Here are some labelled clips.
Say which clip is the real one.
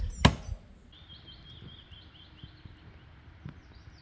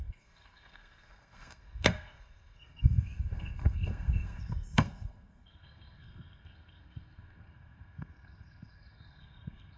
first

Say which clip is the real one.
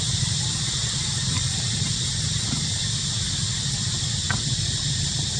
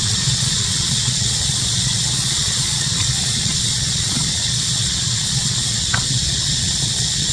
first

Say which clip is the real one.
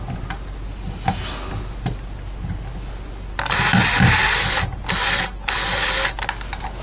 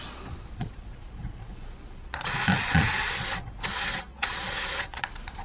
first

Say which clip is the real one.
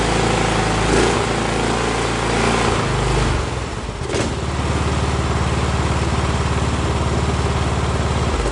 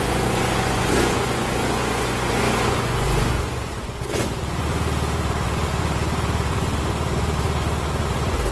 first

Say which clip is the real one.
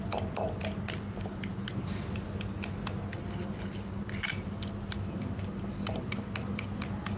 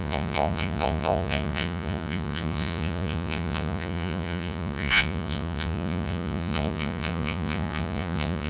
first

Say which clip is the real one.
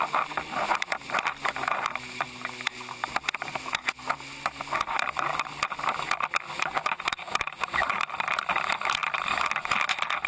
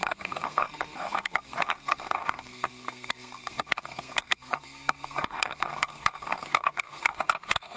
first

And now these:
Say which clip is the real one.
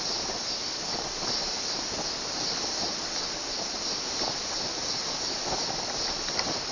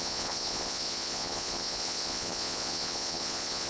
first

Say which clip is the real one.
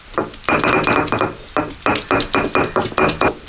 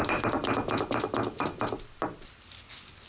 first